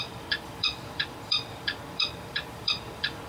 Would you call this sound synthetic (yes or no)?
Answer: yes